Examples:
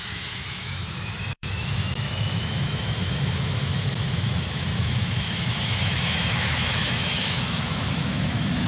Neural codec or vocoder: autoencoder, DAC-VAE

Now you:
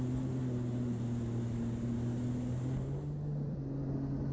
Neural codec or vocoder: none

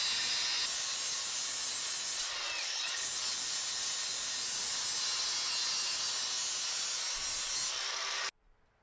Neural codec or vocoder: none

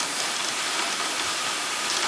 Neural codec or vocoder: none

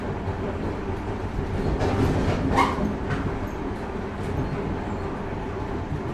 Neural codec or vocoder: none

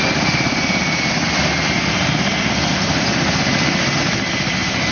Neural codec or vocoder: none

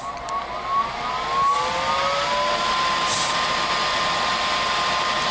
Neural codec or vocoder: none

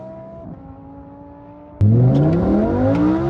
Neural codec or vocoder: none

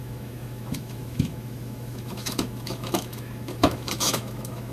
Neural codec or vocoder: autoencoder, DAC-VAE